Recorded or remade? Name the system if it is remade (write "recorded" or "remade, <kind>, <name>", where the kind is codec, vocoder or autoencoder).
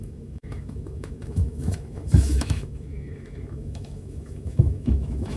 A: remade, autoencoder, DAC-VAE